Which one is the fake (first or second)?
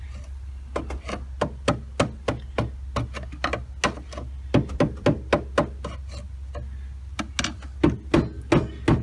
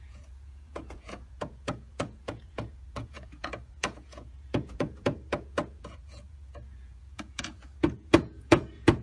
second